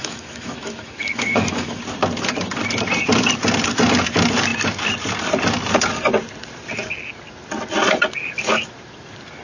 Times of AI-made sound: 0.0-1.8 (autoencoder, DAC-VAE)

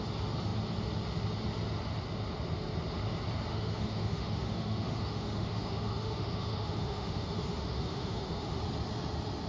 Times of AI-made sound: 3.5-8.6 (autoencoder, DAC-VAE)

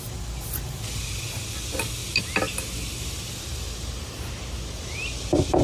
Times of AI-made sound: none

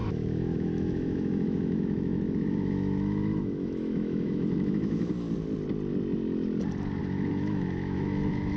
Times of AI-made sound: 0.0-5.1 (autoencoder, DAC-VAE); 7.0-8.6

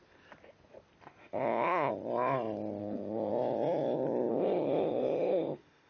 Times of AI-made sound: 1.2-1.9 (autoencoder, DAC-VAE); 2.8-3.3; 4.3-5.9